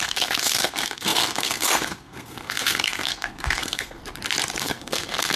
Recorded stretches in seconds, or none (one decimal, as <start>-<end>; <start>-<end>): 4.0-4.6